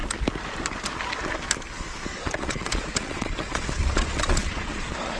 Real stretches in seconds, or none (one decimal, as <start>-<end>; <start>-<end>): 0.0-2.1